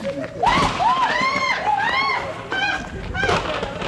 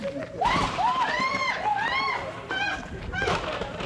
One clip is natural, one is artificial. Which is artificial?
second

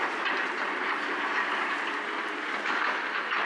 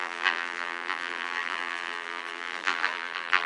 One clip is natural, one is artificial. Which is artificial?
second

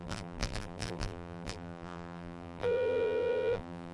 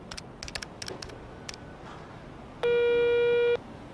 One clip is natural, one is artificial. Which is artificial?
first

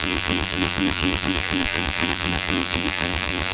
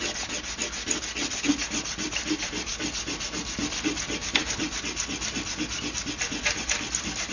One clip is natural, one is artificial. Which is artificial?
first